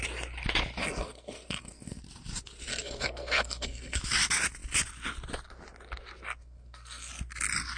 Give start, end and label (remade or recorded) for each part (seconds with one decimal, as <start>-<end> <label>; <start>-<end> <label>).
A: 0.0-0.8 recorded; 0.8-2.0 remade; 2.0-2.7 recorded; 2.7-4.0 remade; 4.0-6.4 recorded; 6.4-7.1 remade; 7.1-7.8 recorded